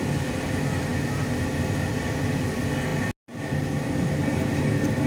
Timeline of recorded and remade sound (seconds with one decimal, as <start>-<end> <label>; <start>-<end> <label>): 0.0-5.1 recorded